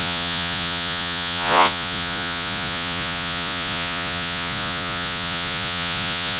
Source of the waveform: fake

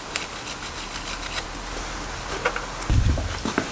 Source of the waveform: real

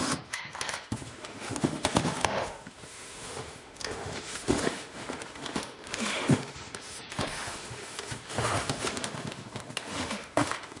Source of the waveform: fake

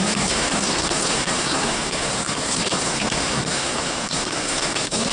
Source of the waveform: fake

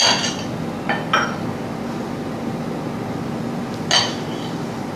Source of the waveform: real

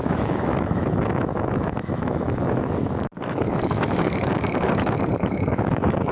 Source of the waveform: fake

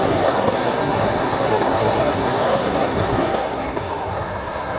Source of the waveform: fake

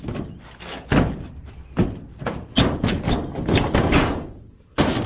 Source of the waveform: real